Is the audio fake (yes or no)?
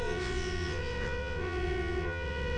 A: yes